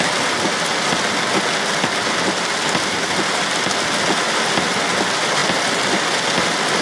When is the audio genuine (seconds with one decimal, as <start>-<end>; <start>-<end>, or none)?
0.0-6.8